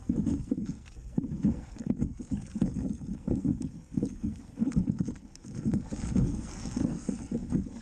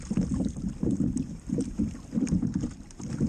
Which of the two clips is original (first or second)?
second